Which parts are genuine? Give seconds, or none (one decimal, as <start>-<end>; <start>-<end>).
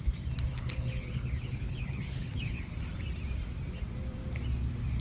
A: 0.0-0.5; 2.7-5.0